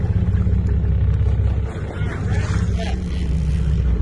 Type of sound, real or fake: real